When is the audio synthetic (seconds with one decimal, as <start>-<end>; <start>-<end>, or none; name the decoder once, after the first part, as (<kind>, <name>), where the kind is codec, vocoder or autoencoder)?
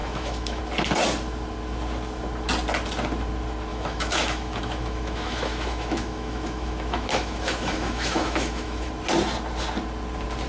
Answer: 0.0-0.6 (autoencoder, DAC-VAE); 3.7-8.9